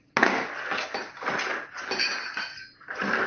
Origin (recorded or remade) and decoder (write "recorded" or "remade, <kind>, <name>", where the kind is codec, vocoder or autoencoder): recorded